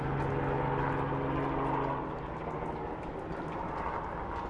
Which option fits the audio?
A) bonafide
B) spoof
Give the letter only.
A